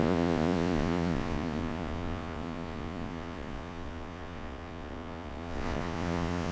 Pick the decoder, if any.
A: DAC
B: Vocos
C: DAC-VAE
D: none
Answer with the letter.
B